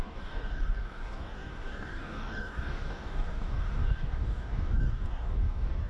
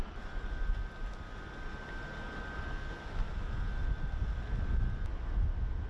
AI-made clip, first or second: first